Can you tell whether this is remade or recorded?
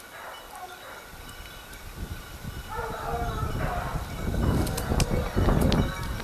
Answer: recorded